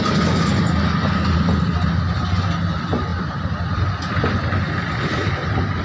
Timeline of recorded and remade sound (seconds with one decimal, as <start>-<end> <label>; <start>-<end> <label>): 0.0-5.8 recorded

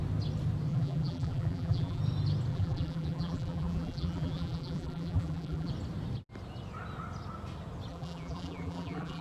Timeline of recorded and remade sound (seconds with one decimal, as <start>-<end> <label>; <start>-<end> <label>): 0.0-0.7 recorded; 0.7-2.0 remade; 2.0-2.5 recorded; 2.5-5.7 remade; 5.7-7.9 recorded; 7.9-9.2 remade

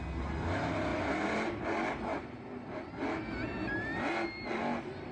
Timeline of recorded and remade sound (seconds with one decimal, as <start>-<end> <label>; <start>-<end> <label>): 0.0-0.9 recorded; 0.9-1.6 remade; 1.6-2.1 recorded; 2.1-2.9 remade; 2.9-5.1 recorded